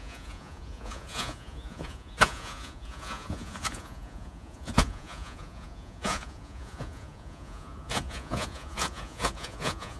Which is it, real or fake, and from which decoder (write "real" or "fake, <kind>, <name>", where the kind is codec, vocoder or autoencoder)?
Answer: fake, vocoder, Vocos